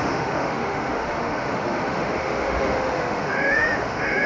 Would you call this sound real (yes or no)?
no